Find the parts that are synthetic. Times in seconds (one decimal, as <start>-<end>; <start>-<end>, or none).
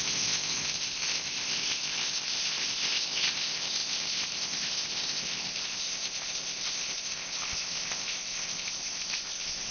0.0-9.7